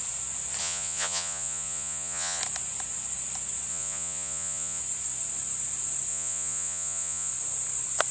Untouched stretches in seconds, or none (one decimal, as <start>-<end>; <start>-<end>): 0.0-0.6; 2.4-3.7; 4.8-6.1; 7.3-8.1